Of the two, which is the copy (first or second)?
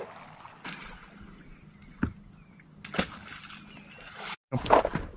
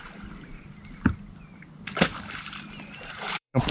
second